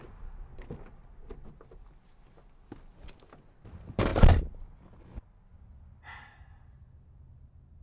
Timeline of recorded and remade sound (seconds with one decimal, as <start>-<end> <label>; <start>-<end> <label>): 0.0-7.8 recorded